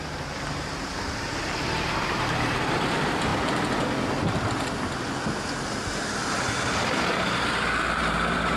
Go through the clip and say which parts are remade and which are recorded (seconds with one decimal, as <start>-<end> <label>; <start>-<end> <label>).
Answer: 0.0-3.3 remade; 3.3-5.9 recorded; 5.9-8.6 remade